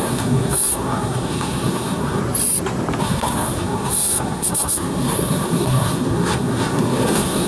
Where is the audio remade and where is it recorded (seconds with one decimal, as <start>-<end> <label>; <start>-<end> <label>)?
0.0-2.2 remade; 2.2-3.0 recorded; 3.0-7.5 remade